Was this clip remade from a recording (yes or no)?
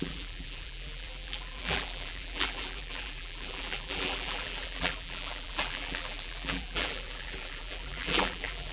yes